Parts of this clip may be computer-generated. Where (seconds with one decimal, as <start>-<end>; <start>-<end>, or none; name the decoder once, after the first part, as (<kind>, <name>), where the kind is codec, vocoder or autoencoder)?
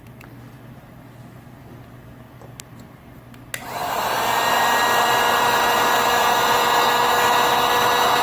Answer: none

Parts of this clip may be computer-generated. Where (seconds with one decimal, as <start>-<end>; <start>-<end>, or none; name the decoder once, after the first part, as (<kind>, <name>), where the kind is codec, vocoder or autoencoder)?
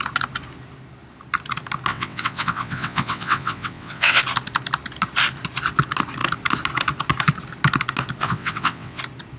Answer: 1.9-4.2 (vocoder, WaveNeXt); 8.2-9.0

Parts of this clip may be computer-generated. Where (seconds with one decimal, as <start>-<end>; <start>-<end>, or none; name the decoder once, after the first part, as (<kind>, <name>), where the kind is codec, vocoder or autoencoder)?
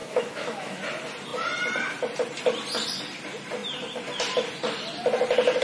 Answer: 0.0-0.8 (autoencoder, DAC-VAE)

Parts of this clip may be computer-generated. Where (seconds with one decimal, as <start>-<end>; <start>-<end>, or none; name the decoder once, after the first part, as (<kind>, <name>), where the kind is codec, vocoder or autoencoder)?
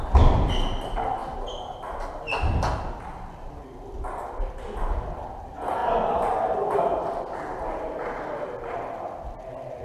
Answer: 5.8-7.0 (vocoder, BigVGAN v2)